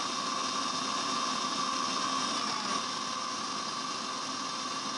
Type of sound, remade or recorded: recorded